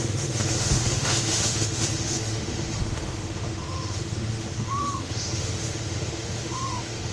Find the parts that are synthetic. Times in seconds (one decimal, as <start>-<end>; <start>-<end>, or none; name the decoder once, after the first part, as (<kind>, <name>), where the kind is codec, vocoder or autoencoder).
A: 0.0-7.1 (autoencoder, DAC-VAE)